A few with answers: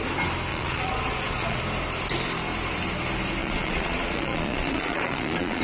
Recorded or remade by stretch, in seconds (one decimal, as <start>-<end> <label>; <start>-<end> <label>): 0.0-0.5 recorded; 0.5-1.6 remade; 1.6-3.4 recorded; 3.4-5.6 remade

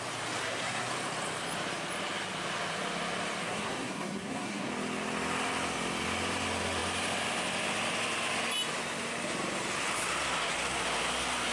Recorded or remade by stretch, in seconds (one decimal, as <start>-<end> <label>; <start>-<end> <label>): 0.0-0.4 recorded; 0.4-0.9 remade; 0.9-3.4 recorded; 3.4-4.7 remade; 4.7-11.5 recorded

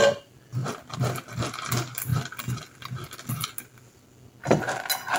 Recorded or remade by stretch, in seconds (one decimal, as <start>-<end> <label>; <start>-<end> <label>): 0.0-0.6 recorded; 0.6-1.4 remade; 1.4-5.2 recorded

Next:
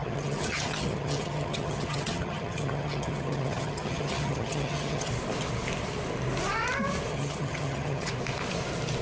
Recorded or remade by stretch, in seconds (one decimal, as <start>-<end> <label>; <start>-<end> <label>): 0.0-5.1 remade; 5.1-7.1 recorded; 7.1-8.1 remade; 8.1-9.0 recorded